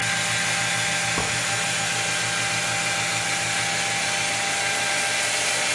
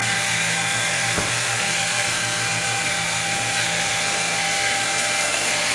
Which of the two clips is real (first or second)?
first